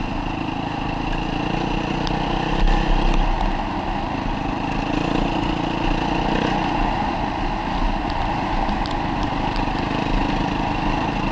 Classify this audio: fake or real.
real